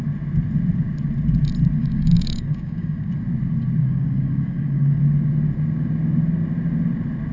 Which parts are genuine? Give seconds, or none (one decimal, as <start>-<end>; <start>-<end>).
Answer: 0.0-1.8; 3.1-3.8; 5.0-7.3